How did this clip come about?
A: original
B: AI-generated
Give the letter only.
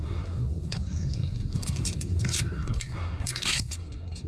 B